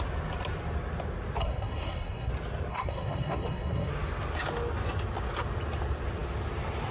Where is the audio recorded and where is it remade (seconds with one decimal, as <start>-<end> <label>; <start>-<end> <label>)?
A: 0.0-1.4 recorded; 1.4-2.3 remade; 2.3-2.7 recorded; 2.7-3.9 remade; 3.9-6.9 recorded